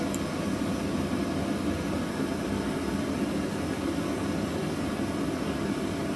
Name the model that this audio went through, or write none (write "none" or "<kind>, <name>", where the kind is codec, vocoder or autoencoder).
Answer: none